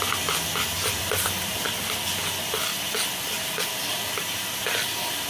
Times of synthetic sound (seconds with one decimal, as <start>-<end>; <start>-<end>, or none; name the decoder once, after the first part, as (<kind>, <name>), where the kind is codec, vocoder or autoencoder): none